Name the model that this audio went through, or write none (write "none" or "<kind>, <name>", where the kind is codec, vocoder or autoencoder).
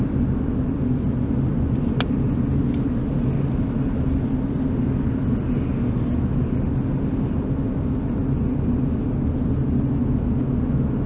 none